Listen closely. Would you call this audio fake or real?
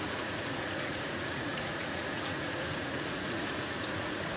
fake